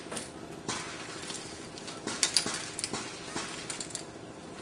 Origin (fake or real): real